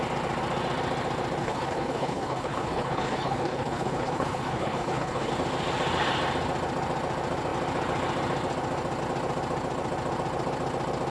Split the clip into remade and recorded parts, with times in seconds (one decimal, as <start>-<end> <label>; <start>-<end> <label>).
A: 0.0-1.4 recorded; 1.4-5.3 remade; 5.3-11.1 recorded

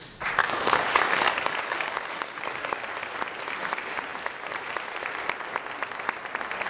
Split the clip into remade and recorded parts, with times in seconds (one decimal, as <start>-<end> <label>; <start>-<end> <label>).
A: 0.0-0.4 recorded; 0.4-2.8 remade; 2.8-6.7 recorded

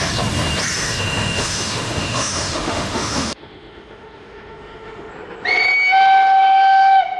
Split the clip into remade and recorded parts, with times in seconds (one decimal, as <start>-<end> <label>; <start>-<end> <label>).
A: 0.0-0.8 recorded; 0.8-5.1 remade; 5.1-7.2 recorded

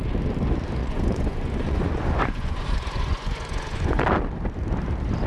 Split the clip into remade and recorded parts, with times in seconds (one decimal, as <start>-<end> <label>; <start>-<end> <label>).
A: 0.0-0.8 recorded; 0.8-4.0 remade; 4.0-5.3 recorded